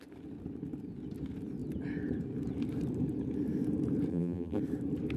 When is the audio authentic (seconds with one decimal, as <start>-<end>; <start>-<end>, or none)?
0.0-4.1; 4.6-5.2